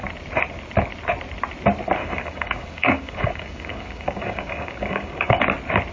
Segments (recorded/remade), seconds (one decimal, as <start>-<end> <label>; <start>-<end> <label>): 0.0-2.0 recorded; 2.0-5.4 remade; 5.4-5.9 recorded